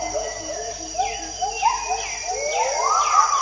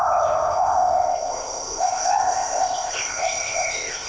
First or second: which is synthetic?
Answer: second